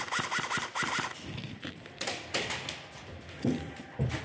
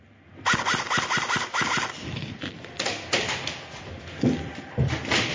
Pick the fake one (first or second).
first